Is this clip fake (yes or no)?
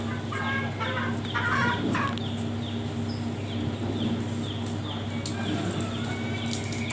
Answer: no